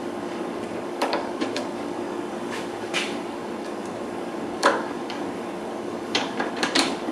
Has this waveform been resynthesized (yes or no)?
yes